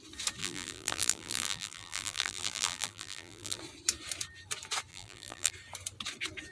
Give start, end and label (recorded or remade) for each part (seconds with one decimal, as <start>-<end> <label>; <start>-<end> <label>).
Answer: 0.0-0.4 recorded; 0.4-3.6 remade; 3.6-4.9 recorded; 4.9-5.5 remade; 5.5-6.5 recorded